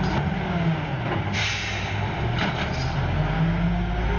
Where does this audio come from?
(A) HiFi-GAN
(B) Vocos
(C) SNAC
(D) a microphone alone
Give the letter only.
D